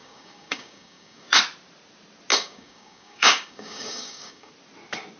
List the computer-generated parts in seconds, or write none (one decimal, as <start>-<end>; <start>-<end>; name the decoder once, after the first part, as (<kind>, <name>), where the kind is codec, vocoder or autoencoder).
0.0-1.4 (codec, DAC); 2.3-4.5